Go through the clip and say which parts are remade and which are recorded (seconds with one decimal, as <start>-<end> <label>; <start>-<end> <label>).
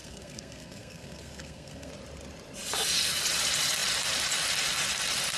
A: 0.0-1.9 remade; 1.9-5.4 recorded